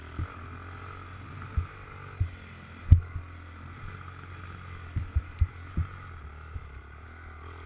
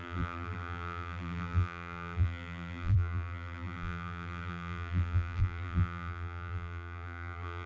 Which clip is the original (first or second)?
first